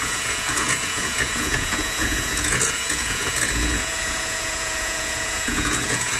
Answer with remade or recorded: remade